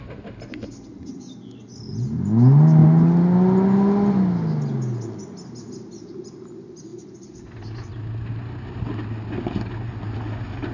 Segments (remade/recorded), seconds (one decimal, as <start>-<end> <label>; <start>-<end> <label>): 0.0-10.7 recorded